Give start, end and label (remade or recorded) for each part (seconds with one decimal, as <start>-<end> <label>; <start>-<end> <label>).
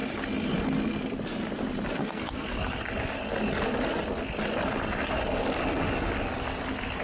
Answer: 0.0-2.0 recorded; 2.0-2.6 remade; 2.6-7.0 recorded